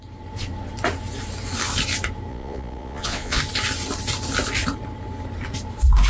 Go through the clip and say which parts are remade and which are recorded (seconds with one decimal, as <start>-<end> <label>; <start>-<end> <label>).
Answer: 0.0-2.3 recorded; 2.3-3.4 remade; 3.4-6.1 recorded